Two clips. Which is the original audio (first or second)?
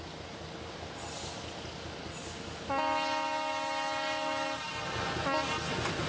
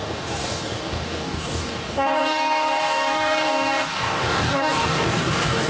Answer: first